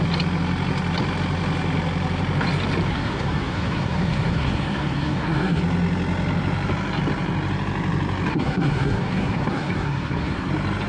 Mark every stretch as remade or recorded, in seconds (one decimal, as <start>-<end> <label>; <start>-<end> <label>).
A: 0.0-2.9 recorded; 2.9-5.6 remade; 5.6-8.3 recorded; 8.3-10.5 remade; 10.5-10.9 recorded